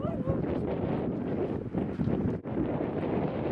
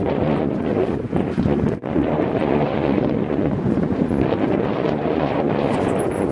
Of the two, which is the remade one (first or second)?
second